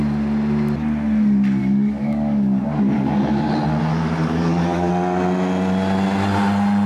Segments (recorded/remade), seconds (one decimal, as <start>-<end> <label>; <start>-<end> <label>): 0.0-1.6 recorded; 1.6-3.5 remade; 3.5-3.9 recorded; 3.9-4.9 remade; 4.9-6.9 recorded

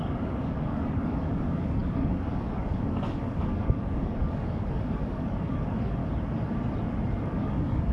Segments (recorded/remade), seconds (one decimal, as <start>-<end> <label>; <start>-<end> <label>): 0.0-6.0 remade; 6.0-7.2 recorded; 7.2-7.9 remade

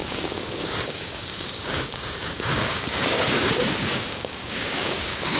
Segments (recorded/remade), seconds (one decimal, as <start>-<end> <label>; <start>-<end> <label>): 0.0-5.4 remade

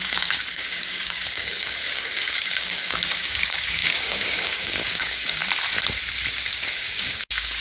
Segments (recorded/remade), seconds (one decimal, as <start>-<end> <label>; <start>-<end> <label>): 0.0-5.4 remade; 5.4-6.3 recorded; 6.3-7.6 remade

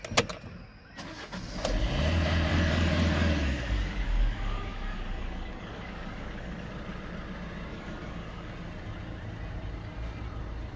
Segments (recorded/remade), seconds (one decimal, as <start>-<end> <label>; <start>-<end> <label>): 0.0-2.5 recorded; 2.5-6.7 remade; 6.7-7.7 recorded; 7.7-8.5 remade; 8.5-10.8 recorded

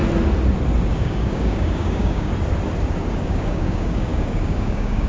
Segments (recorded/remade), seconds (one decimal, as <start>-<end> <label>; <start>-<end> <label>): 0.0-0.9 recorded; 0.9-2.3 remade; 2.3-3.1 recorded; 3.1-5.1 remade

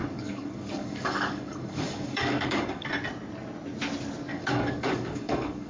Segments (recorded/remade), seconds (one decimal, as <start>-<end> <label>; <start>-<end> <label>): 0.0-2.9 remade; 2.9-4.3 recorded; 4.3-5.7 remade

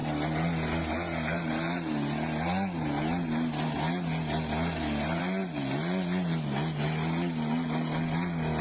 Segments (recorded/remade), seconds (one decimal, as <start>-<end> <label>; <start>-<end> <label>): 0.0-8.6 recorded